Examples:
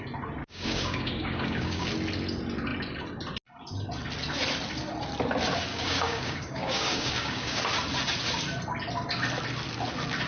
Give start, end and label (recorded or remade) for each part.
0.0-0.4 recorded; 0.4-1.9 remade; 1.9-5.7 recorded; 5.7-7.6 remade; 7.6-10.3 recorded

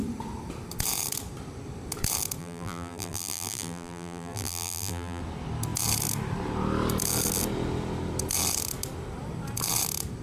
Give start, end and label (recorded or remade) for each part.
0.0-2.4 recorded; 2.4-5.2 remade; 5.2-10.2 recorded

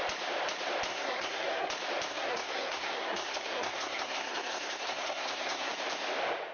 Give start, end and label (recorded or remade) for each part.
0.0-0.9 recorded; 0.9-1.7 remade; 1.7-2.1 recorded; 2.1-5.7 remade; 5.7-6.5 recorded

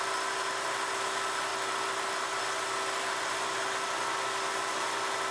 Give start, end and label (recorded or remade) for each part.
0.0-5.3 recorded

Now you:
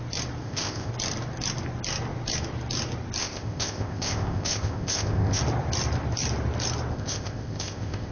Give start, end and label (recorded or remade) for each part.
0.0-0.4 recorded; 0.4-0.9 remade; 0.9-3.2 recorded; 3.2-5.4 remade; 5.4-6.9 recorded; 6.9-8.1 remade